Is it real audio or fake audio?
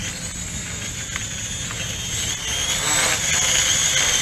real